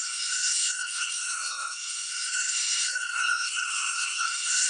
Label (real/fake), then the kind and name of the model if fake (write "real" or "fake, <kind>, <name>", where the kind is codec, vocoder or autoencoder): fake, codec, SNAC